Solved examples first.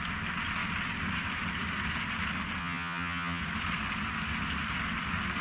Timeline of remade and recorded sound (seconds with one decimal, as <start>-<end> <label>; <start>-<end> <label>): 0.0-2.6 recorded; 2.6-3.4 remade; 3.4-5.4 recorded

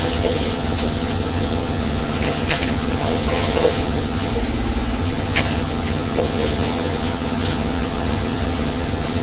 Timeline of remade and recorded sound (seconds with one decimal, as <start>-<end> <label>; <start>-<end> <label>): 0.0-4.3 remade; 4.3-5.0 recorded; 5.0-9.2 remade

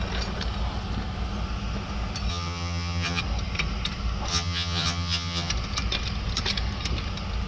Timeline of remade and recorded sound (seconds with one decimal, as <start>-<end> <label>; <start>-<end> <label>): 0.0-2.3 recorded; 2.3-3.2 remade; 3.2-4.3 recorded; 4.3-5.5 remade; 5.5-7.5 recorded

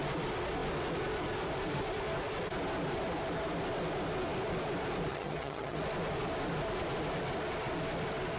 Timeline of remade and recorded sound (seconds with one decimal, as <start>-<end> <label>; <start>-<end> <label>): 0.0-5.1 recorded; 5.1-5.8 remade; 5.8-8.4 recorded

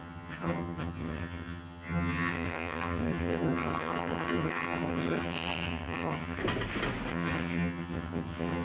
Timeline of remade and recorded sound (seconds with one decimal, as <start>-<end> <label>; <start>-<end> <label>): 0.0-6.4 remade; 6.4-7.1 recorded; 7.1-8.6 remade

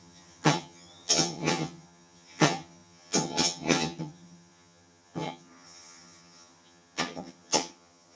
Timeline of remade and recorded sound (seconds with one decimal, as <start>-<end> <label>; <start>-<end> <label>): 0.0-8.2 remade

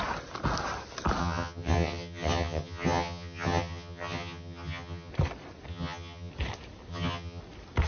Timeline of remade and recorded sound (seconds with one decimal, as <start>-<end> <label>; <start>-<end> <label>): 0.0-1.2 recorded; 1.2-5.1 remade; 5.1-5.7 recorded; 5.7-6.3 remade; 6.3-6.9 recorded; 6.9-7.4 remade; 7.4-7.9 recorded